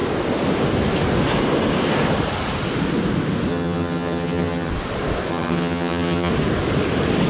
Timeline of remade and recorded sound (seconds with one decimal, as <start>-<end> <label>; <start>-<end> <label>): 0.0-3.5 recorded; 3.5-4.7 remade; 4.7-5.3 recorded; 5.3-6.3 remade; 6.3-7.3 recorded